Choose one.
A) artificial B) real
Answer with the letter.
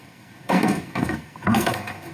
A